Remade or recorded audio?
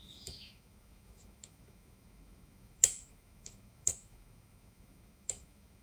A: remade